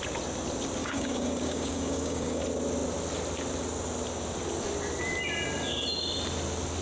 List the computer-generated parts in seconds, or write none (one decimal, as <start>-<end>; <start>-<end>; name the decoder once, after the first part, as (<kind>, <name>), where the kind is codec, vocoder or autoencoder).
0.8-2.4 (codec, DAC)